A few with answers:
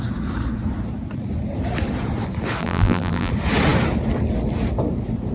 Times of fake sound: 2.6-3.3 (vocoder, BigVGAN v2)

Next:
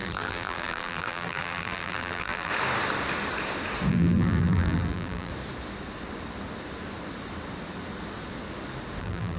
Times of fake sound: 0.0-2.5 (vocoder, BigVGAN v2); 3.9-5.3; 9.0-9.4